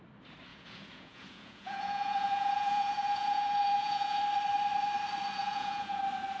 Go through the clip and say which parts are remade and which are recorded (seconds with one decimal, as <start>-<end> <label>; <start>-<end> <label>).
0.0-0.5 recorded; 0.5-4.2 remade; 4.2-5.4 recorded; 5.4-6.0 remade; 6.0-6.4 recorded